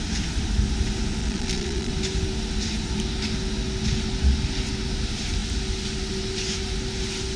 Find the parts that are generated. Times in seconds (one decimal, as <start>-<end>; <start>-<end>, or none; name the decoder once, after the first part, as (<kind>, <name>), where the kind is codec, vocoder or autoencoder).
1.2-1.9 (vocoder, Vocos)